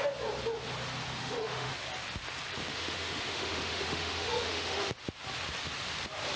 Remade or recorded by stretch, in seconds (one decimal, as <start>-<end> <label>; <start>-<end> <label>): 0.0-1.2 recorded; 1.2-1.7 remade; 1.7-2.7 recorded; 2.7-4.9 remade; 4.9-6.4 recorded